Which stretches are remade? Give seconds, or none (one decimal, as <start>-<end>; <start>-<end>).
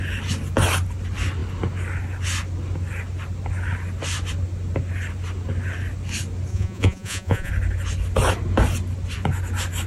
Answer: 6.5-7.5